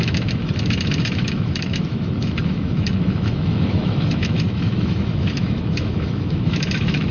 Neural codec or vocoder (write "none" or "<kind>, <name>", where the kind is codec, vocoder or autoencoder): autoencoder, DAC-VAE